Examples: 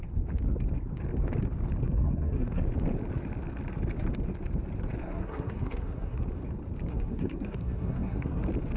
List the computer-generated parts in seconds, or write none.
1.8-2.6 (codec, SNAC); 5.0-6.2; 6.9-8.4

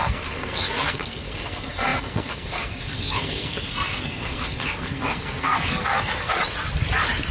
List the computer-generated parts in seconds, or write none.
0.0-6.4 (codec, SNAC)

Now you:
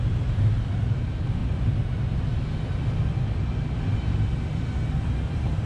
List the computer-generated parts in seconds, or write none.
none